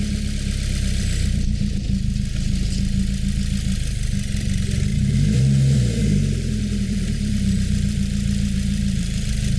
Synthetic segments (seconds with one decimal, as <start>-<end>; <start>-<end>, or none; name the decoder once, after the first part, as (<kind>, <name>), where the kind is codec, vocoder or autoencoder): 4.9-9.2 (vocoder, BigVGAN v2)